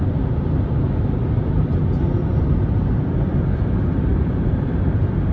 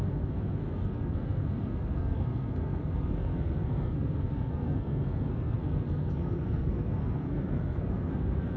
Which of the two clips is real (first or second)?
first